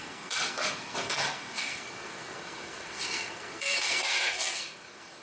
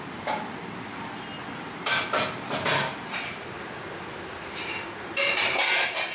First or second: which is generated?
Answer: first